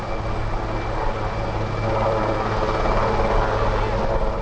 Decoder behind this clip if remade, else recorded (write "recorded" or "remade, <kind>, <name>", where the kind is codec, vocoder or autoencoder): recorded